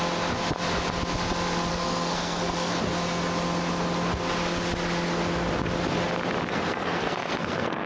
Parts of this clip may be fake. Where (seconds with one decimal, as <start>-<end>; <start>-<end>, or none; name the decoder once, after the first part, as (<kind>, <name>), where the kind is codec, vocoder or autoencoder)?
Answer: 1.7-2.7 (codec, SNAC); 6.5-7.9